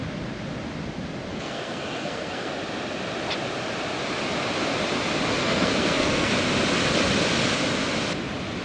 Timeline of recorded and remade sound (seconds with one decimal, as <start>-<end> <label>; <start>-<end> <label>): 0.0-1.3 recorded; 1.3-2.5 remade; 2.5-5.4 recorded; 5.4-6.3 remade; 6.3-8.6 recorded